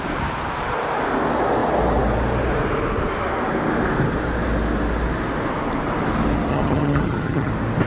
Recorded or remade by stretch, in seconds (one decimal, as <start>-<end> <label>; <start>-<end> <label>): 0.0-6.5 recorded; 6.5-7.5 remade; 7.5-7.9 recorded